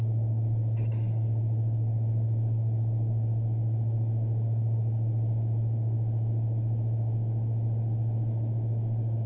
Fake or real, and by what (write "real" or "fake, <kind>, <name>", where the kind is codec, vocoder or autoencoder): fake, autoencoder, DAC-VAE